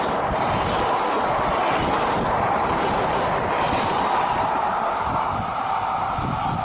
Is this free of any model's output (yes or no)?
yes